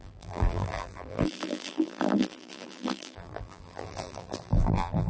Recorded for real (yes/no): no